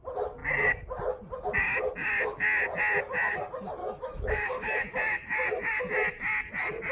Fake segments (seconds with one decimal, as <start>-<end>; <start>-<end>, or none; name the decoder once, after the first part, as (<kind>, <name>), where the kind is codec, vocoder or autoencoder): 3.8-5.8 (autoencoder, DAC-VAE)